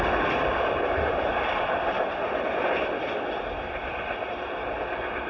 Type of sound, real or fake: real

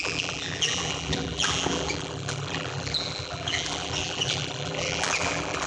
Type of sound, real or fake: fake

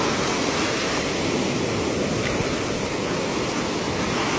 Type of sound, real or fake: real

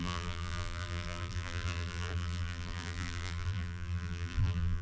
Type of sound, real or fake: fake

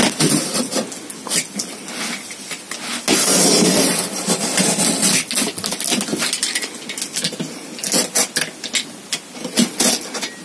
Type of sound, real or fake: real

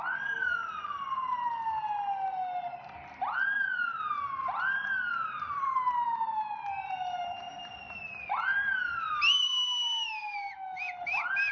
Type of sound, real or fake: real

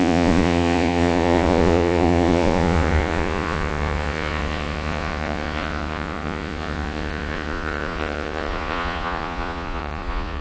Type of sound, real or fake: fake